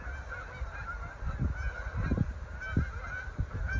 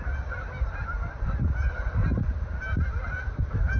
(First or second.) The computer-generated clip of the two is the second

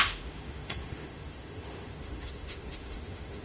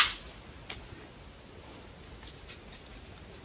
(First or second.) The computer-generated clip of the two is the first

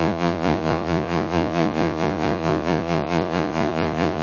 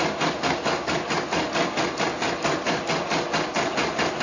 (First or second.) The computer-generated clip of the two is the first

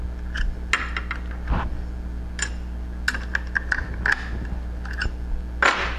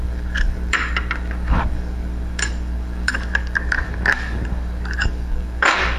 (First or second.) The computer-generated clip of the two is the second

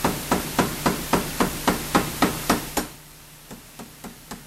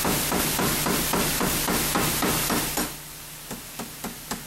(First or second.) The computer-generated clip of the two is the first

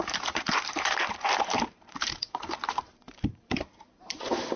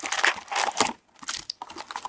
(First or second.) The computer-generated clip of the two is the first